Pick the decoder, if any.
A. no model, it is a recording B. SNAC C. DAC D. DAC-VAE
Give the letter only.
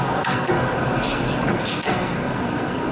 B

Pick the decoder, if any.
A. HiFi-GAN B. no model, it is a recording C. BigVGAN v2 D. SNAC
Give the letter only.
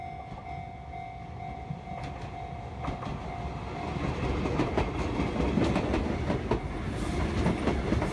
B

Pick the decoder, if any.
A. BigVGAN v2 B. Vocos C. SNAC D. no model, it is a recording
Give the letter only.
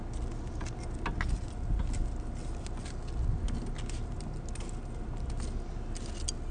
D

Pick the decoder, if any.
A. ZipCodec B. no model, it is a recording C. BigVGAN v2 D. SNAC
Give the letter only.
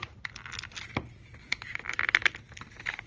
B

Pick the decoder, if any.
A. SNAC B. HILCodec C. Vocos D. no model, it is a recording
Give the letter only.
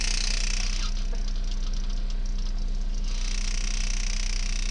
D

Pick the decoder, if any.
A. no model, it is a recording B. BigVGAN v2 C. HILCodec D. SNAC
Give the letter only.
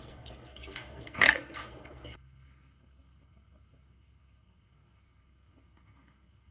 D